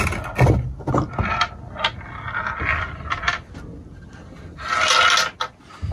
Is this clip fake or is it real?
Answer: real